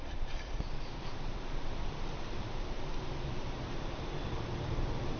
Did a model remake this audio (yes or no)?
yes